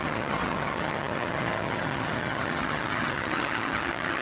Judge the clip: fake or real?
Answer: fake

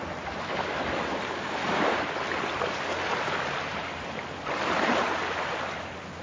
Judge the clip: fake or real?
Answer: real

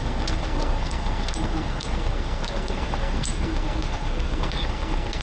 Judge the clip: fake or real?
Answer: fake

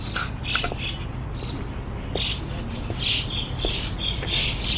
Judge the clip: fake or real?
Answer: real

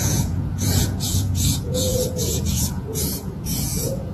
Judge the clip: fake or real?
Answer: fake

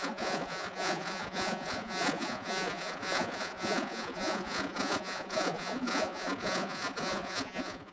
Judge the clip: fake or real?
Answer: fake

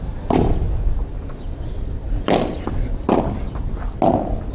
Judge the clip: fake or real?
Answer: real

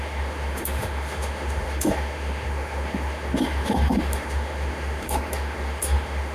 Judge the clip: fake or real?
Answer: fake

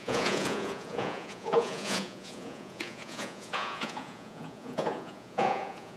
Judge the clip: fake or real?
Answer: fake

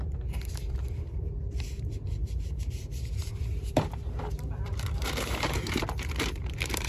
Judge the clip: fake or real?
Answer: fake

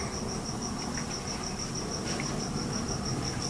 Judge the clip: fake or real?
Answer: real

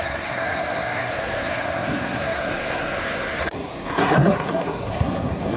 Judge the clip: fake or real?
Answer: fake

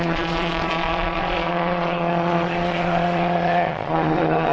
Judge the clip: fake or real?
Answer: fake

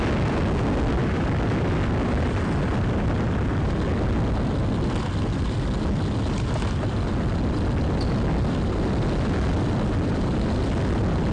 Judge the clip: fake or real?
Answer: real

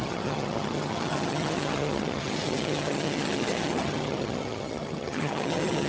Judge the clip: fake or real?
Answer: fake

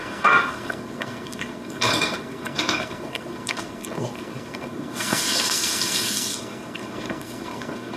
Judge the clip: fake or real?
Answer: fake